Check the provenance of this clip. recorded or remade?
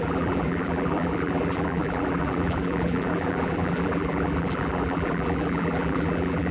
remade